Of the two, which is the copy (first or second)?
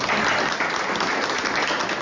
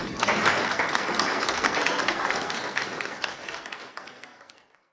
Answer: second